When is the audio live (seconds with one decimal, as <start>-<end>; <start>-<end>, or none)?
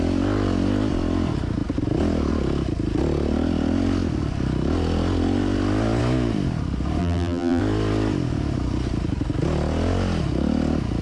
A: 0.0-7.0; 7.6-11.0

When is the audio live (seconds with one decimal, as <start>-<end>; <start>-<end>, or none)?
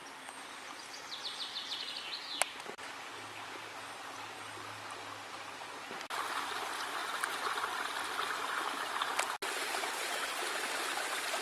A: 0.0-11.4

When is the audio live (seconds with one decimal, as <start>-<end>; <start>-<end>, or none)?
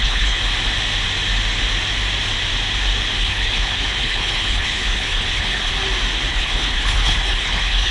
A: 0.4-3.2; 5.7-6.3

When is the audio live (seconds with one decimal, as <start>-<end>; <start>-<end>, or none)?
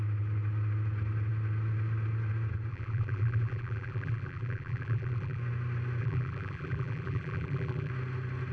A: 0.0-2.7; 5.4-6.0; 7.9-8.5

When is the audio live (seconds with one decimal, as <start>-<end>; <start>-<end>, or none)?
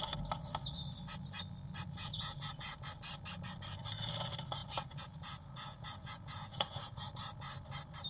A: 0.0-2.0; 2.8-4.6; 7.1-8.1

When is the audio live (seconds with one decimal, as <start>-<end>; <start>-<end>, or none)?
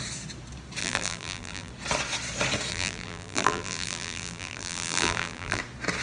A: 0.0-0.8; 1.7-2.7; 5.6-6.0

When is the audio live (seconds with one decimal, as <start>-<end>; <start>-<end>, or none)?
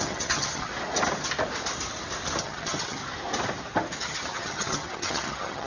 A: 0.7-2.4; 3.0-4.0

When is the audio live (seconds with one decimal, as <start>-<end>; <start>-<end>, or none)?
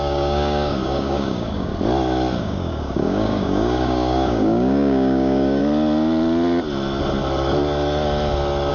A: 1.7-2.4; 5.6-8.7